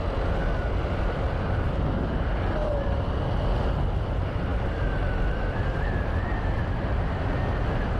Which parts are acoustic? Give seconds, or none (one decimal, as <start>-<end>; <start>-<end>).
0.0-8.0